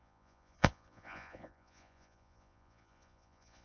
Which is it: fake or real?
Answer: fake